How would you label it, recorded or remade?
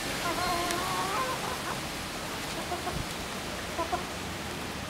recorded